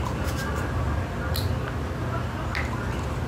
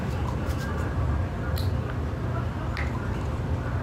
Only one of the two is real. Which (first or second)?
first